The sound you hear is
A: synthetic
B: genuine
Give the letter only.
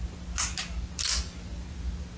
B